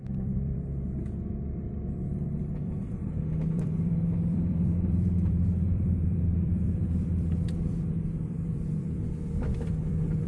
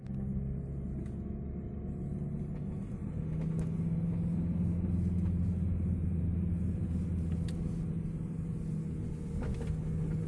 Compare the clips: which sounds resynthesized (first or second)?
first